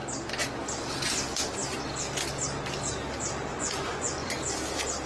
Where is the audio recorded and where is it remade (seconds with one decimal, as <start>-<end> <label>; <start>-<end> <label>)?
0.0-3.5 recorded; 3.5-4.3 remade; 4.3-5.1 recorded